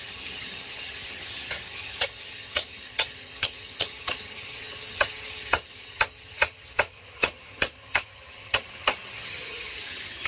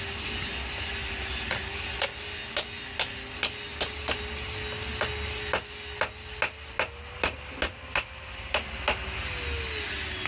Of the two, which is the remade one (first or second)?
first